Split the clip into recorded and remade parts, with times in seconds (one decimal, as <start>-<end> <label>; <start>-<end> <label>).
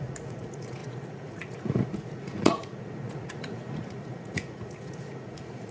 0.0-5.7 remade